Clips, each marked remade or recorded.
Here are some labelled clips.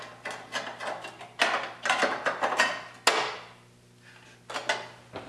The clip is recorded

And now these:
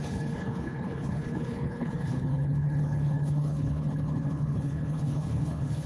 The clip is remade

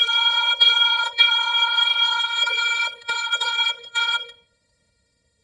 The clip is remade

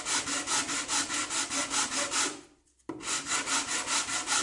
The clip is recorded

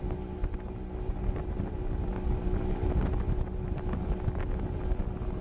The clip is recorded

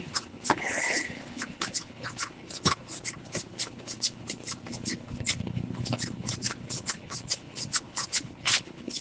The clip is remade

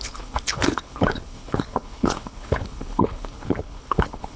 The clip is remade